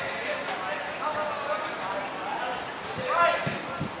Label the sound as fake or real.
real